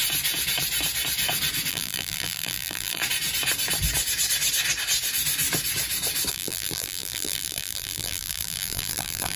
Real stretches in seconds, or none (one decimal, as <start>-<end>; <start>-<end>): 0.0-1.7; 3.0-6.3